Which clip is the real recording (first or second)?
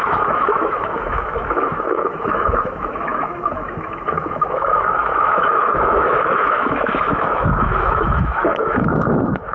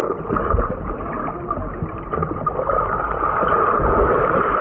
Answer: second